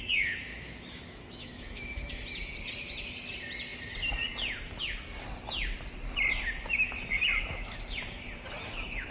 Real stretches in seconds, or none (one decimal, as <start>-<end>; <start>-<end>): 0.0-0.5; 2.1-7.4; 7.9-9.1